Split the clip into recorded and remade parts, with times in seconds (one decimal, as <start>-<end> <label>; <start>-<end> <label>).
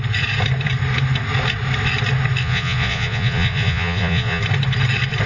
0.0-2.4 recorded; 2.4-4.4 remade; 4.4-5.3 recorded